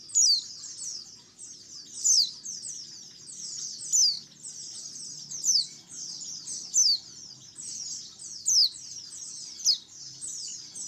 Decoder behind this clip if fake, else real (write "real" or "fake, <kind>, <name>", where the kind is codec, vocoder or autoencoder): real